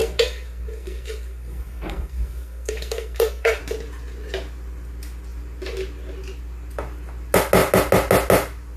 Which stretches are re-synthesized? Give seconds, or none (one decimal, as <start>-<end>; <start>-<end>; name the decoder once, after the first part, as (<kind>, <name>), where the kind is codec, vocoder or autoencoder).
0.0-3.6 (codec, SNAC)